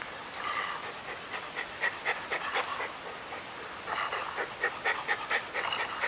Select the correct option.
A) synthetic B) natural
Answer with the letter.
B